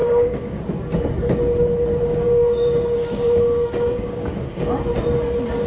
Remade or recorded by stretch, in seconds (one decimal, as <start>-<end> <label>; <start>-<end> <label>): 0.0-0.6 remade; 0.6-1.9 recorded; 1.9-4.7 remade; 4.7-5.7 recorded